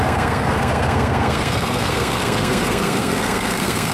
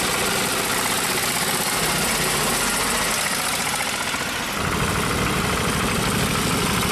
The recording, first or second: second